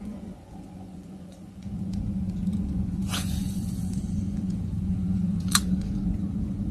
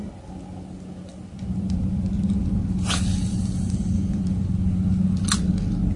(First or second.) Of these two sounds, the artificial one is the first